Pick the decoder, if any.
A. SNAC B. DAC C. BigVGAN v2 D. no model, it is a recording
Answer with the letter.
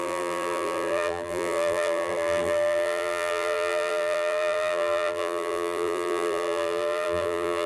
C